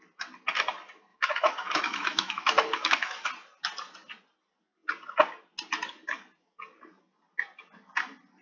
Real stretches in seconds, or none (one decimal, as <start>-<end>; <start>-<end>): 0.0-1.1; 3.3-8.4